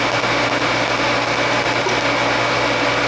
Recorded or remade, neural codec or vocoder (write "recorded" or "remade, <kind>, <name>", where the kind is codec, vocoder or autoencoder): remade, vocoder, BigVGAN v2